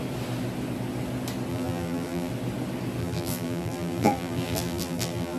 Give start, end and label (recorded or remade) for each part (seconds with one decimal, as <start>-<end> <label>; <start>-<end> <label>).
0.0-1.5 recorded; 1.5-2.3 remade; 2.3-3.0 recorded; 3.0-5.4 remade